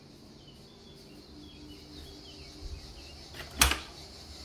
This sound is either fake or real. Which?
real